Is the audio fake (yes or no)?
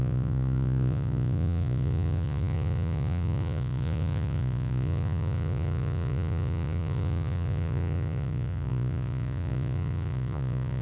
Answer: yes